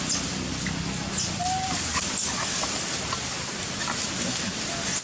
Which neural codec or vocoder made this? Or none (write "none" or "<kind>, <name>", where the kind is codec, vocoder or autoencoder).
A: none